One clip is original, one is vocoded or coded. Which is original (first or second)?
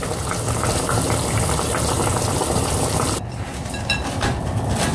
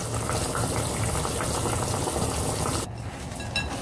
second